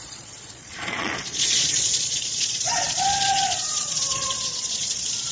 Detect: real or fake fake